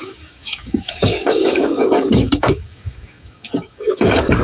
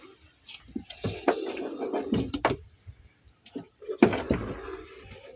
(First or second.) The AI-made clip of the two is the first